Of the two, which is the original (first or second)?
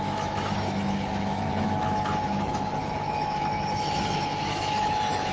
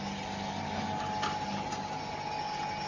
second